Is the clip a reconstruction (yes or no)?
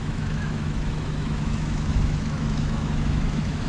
yes